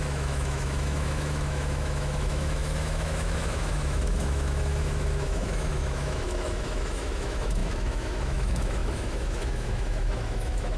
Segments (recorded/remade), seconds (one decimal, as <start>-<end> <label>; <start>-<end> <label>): 0.0-10.8 remade